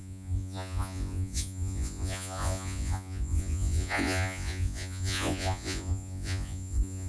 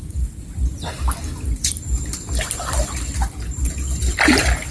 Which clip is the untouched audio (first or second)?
second